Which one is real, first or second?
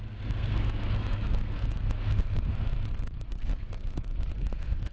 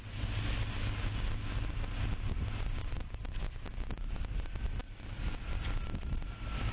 second